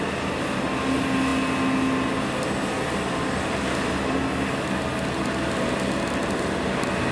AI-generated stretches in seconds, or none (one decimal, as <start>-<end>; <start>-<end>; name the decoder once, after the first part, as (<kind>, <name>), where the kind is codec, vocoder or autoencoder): none